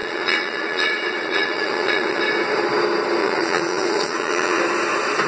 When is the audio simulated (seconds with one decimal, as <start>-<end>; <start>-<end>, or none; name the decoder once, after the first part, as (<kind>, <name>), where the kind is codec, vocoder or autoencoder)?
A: 0.0-2.2 (vocoder, Vocos); 3.2-4.6